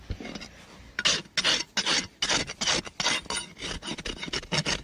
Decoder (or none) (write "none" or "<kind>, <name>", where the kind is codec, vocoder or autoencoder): none